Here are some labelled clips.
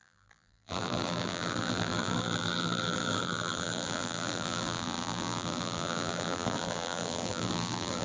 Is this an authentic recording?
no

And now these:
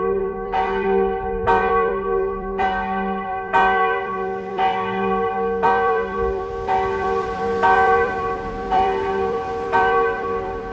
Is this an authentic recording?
no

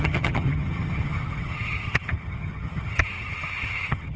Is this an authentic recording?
no